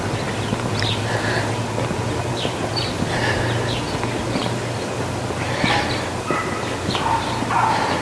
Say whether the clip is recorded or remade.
recorded